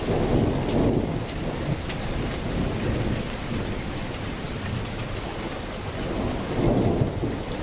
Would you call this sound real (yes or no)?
yes